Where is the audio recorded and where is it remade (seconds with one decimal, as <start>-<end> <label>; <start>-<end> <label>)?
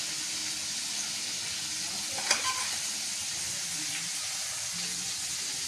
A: 0.0-5.7 recorded